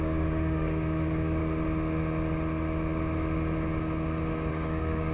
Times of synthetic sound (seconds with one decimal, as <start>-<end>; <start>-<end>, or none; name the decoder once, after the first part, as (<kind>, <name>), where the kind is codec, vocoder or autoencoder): 0.0-1.4 (codec, DAC); 4.5-5.1